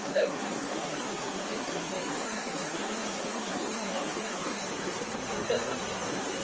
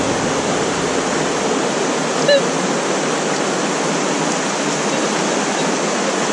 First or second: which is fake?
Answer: first